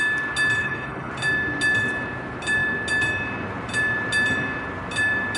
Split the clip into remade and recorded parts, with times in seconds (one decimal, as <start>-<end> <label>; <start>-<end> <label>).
0.0-0.6 recorded; 0.6-1.1 remade; 1.1-5.4 recorded